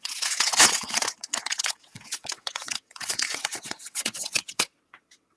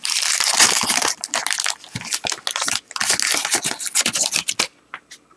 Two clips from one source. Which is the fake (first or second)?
first